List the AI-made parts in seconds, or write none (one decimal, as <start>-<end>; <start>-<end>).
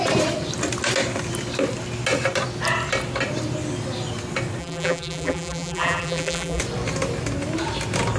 4.6-6.6